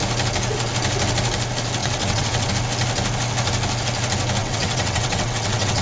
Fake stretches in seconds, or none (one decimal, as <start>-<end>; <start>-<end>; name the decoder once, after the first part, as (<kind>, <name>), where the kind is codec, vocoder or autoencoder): 1.8-2.5 (vocoder, WaveNeXt); 4.4-5.8